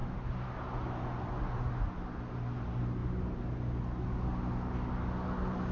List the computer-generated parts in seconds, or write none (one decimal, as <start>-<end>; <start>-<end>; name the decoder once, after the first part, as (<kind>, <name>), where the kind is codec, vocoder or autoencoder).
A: none